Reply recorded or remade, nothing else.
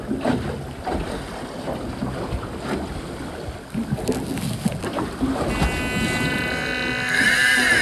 recorded